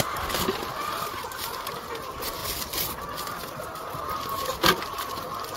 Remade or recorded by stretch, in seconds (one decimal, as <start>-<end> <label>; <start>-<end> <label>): 0.0-5.6 recorded